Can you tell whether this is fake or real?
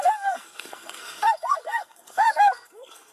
fake